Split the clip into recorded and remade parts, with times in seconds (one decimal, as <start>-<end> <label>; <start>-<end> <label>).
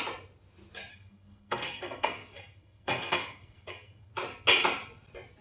0.0-0.9 recorded; 0.9-4.1 remade; 4.1-5.4 recorded